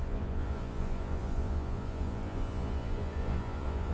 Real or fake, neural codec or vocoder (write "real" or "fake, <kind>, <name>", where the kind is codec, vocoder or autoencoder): fake, vocoder, Vocos